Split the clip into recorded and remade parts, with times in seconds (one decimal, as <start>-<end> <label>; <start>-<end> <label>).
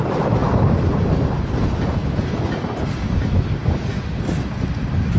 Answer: 0.0-0.4 remade; 0.4-1.1 recorded; 1.1-2.0 remade; 2.0-3.9 recorded; 3.9-5.2 remade